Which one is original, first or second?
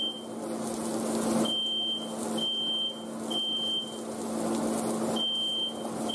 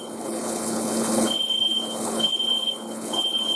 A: first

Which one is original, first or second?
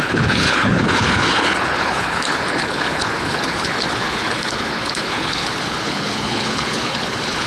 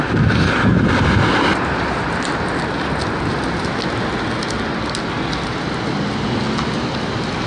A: second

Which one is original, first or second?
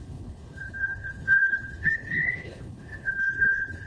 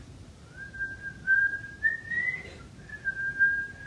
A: second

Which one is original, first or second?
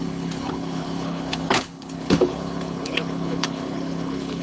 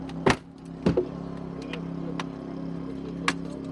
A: second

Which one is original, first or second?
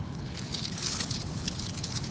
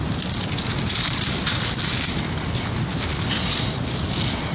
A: second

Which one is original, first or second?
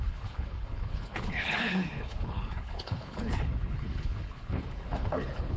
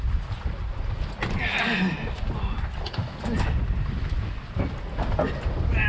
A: second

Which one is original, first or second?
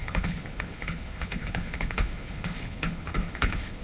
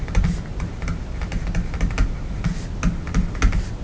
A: second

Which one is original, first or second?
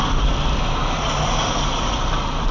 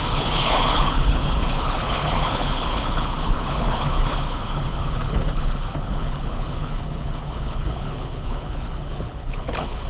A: first